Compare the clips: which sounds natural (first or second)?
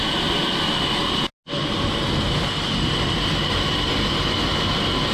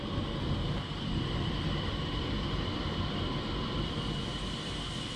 first